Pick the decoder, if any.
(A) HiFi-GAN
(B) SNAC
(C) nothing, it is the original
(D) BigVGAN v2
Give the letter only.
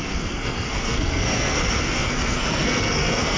B